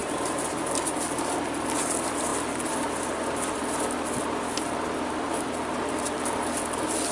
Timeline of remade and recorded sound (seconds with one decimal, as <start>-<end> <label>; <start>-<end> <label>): 0.0-7.1 recorded